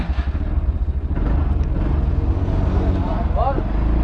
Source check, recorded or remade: recorded